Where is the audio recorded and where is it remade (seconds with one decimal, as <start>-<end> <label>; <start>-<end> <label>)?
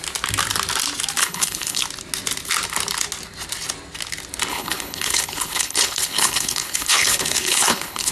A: 0.0-1.2 recorded; 1.2-1.8 remade; 1.8-4.5 recorded; 4.5-8.1 remade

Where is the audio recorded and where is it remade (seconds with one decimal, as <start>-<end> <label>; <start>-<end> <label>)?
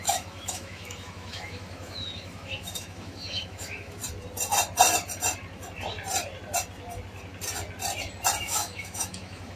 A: 0.0-4.0 remade; 4.0-8.4 recorded; 8.4-9.6 remade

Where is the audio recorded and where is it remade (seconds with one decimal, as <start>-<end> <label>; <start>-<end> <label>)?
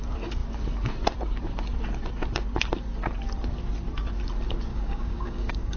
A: 0.0-4.7 recorded; 4.7-5.8 remade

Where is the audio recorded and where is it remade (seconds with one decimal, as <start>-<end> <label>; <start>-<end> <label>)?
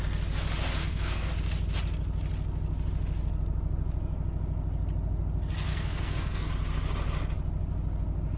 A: 0.0-0.8 recorded; 0.8-1.3 remade; 1.3-5.7 recorded; 5.7-6.5 remade; 6.5-8.4 recorded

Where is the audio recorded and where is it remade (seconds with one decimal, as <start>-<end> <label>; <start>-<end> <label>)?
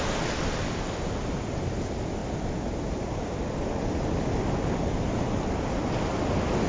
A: 0.0-6.7 recorded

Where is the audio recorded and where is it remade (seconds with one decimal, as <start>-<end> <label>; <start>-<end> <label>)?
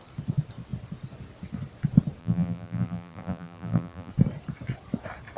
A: 0.0-2.2 recorded; 2.2-4.1 remade; 4.1-5.4 recorded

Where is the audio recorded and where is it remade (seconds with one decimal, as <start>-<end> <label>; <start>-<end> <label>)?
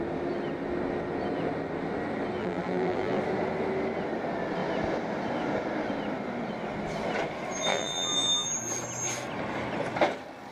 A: 0.0-2.4 recorded; 2.4-3.2 remade; 3.2-7.7 recorded; 7.7-8.5 remade; 8.5-10.5 recorded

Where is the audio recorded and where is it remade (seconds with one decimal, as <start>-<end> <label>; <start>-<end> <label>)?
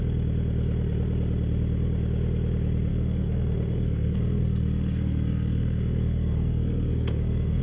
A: 0.0-2.9 recorded; 2.9-7.6 remade